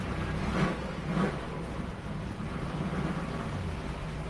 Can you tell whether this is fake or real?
real